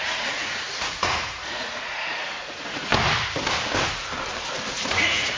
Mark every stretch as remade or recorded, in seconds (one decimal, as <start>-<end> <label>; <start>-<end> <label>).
0.0-2.9 remade; 2.9-4.7 recorded; 4.7-5.4 remade